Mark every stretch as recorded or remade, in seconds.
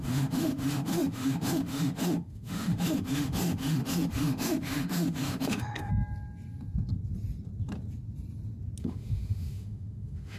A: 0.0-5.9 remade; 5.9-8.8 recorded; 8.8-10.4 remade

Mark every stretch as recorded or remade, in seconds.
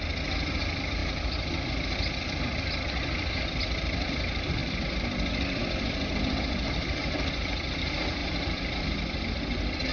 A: 0.0-1.0 recorded; 1.0-4.1 remade; 4.1-4.6 recorded; 4.6-6.3 remade; 6.3-8.2 recorded; 8.2-8.8 remade; 8.8-9.9 recorded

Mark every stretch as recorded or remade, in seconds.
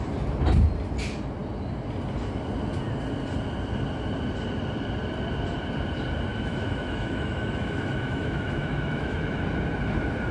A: 0.0-6.3 recorded; 6.3-9.4 remade; 9.4-10.3 recorded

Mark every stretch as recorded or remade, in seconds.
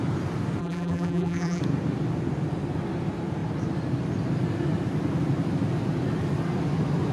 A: 0.0-0.6 recorded; 0.6-1.6 remade; 1.6-7.1 recorded